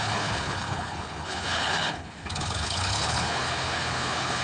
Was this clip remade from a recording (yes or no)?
yes